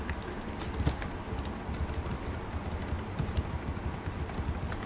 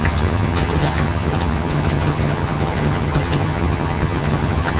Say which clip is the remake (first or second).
second